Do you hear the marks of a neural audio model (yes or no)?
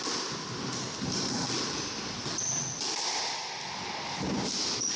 no